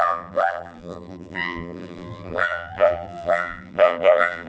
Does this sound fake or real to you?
fake